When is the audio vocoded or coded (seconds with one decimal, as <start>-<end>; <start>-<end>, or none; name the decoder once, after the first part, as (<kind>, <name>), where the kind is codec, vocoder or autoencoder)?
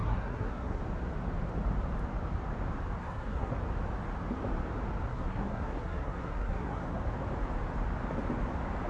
0.0-0.8 (codec, SNAC); 3.0-3.5; 5.1-7.0